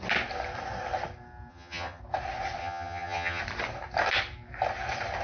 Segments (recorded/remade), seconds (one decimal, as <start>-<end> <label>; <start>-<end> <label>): 0.0-1.5 recorded; 1.5-2.0 remade; 2.0-2.6 recorded; 2.6-3.4 remade; 3.4-5.2 recorded